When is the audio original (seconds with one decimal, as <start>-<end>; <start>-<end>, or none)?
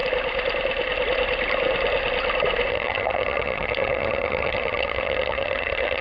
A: 0.0-2.7